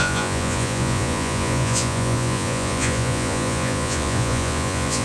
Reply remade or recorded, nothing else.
remade